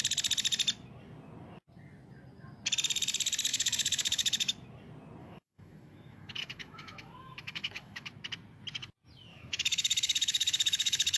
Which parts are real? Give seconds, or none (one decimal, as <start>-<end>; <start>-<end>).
0.0-3.5; 4.5-5.2; 8.1-9.3